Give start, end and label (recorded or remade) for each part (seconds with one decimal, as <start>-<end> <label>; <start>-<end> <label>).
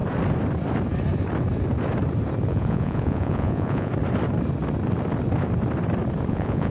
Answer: 0.0-2.5 recorded; 2.5-3.9 remade; 3.9-6.3 recorded; 6.3-6.7 remade